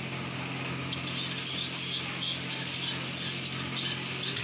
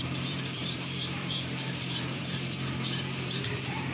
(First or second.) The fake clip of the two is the second